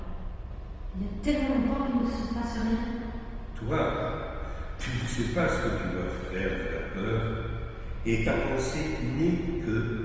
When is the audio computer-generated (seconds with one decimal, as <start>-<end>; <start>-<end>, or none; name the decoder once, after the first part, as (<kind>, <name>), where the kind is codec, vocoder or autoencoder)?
none